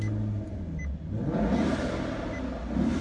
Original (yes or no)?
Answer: yes